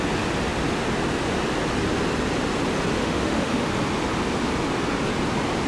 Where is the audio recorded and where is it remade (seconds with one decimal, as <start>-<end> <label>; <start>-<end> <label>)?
0.0-3.0 recorded; 3.0-3.7 remade; 3.7-5.7 recorded